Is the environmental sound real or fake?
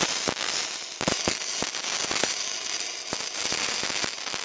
real